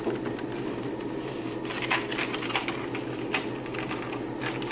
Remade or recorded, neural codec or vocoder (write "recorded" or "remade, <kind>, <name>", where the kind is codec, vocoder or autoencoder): recorded